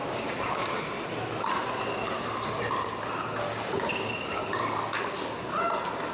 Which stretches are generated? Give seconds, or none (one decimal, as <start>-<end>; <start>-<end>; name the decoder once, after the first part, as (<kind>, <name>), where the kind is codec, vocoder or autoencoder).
0.0-0.8 (codec, DAC); 3.9-4.6